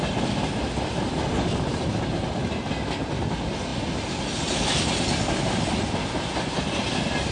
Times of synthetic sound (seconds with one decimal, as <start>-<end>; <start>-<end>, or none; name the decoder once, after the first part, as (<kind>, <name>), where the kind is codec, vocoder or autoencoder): none